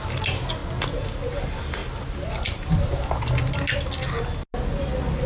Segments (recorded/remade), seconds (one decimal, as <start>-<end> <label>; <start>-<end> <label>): 0.0-5.3 recorded